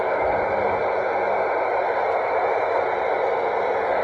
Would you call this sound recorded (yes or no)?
yes